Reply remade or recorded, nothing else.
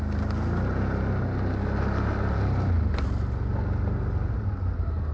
recorded